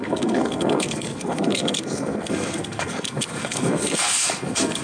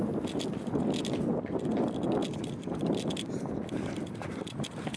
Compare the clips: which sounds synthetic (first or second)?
first